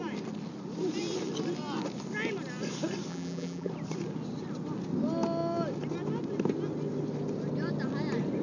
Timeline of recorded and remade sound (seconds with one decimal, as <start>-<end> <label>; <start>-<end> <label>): 0.0-3.1 recorded; 3.1-3.7 remade; 3.7-8.4 recorded